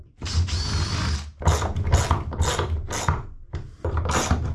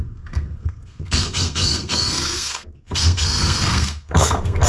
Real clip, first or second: first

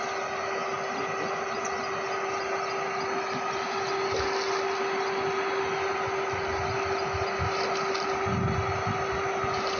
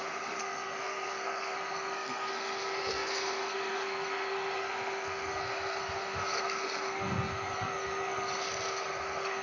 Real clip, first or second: first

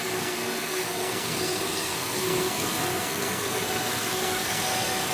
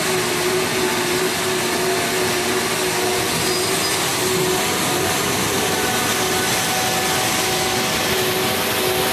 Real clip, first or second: second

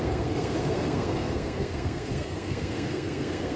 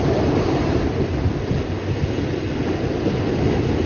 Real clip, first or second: second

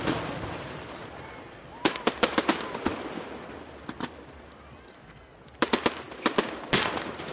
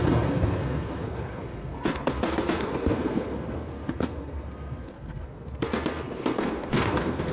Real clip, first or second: first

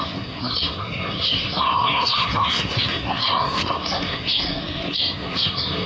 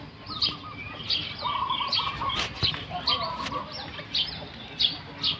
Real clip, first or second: second